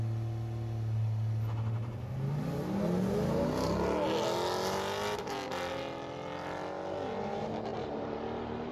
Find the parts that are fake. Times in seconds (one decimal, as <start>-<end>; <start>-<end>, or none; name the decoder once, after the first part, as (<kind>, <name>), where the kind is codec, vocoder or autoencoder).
7.7-8.7 (vocoder, BigVGAN v2)